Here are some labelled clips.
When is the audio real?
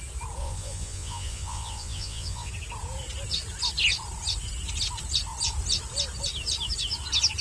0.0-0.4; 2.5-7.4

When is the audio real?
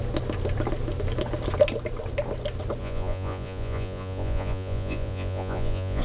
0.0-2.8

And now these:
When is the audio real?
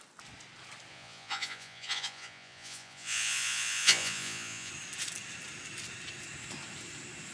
0.0-0.9; 4.7-7.3